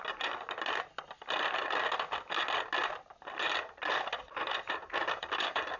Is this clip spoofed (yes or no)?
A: no